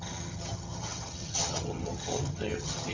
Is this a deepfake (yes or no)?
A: yes